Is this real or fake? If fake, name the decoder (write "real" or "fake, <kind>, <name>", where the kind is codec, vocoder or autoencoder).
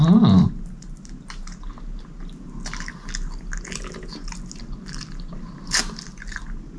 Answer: real